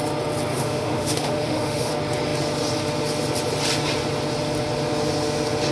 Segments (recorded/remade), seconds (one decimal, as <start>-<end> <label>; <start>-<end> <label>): 0.0-0.5 recorded; 0.5-1.9 remade; 1.9-5.7 recorded